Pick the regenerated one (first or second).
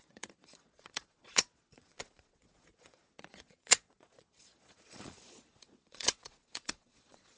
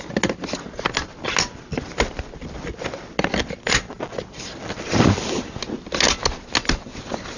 first